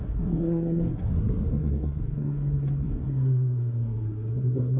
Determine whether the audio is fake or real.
fake